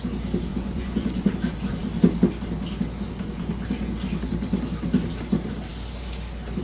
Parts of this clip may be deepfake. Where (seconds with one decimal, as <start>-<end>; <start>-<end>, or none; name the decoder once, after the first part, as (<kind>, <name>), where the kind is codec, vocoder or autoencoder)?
0.5-1.3 (vocoder, Vocos)